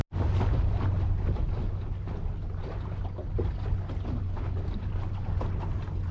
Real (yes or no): yes